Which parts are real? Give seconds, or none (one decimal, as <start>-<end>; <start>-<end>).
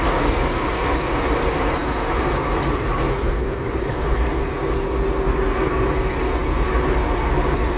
0.0-7.8